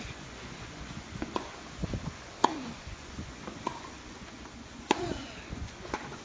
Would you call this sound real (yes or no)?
no